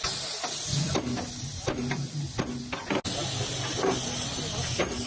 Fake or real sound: real